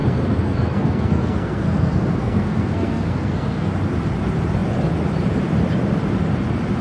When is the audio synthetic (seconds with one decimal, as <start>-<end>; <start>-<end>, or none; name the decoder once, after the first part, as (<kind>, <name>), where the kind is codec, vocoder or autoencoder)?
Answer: 0.0-3.7 (codec, SNAC)